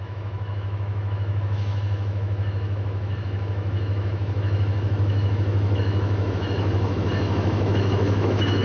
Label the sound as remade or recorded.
remade